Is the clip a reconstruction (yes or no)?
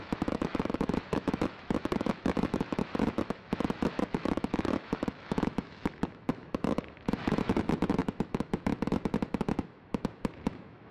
yes